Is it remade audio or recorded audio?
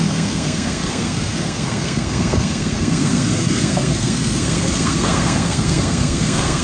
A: remade